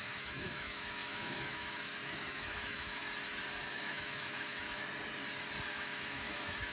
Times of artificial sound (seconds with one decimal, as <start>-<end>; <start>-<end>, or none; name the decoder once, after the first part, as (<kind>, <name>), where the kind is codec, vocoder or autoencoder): 0.0-3.0 (autoencoder, DAC-VAE); 3.7-4.8; 5.7-6.7